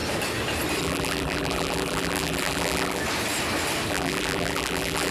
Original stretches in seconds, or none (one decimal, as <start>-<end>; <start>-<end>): 0.0-0.8; 3.0-3.9